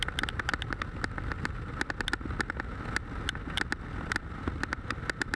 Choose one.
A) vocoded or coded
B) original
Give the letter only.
B